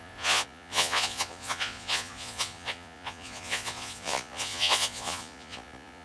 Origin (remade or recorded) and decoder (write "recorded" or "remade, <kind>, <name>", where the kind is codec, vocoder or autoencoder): remade, vocoder, Vocos